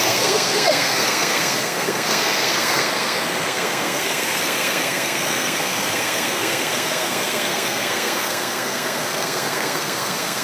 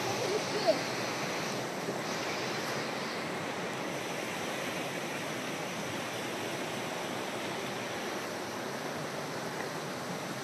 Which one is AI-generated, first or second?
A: first